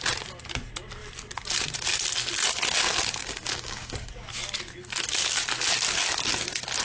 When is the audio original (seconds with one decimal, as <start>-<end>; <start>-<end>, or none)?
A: 0.0-3.2; 4.1-6.8